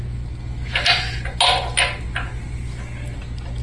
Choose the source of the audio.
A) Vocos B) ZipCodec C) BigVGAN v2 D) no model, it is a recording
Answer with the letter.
D